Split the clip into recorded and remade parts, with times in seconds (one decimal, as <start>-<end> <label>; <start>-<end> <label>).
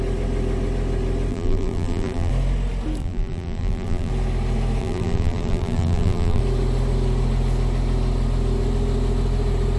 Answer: 0.0-1.3 recorded; 1.3-2.3 remade; 2.3-3.0 recorded; 3.0-4.1 remade; 4.1-4.8 recorded; 4.8-6.4 remade; 6.4-9.8 recorded